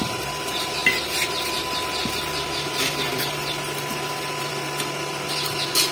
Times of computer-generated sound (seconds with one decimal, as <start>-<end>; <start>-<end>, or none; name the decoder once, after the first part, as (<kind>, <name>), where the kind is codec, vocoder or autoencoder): none